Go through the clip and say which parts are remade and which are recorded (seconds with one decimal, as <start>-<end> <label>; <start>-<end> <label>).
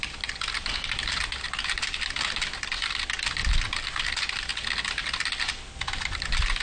0.0-3.4 remade; 3.4-4.0 recorded; 4.0-4.5 remade; 4.5-6.1 recorded; 6.1-6.6 remade